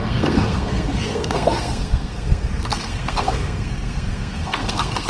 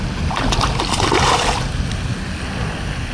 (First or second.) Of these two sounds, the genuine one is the second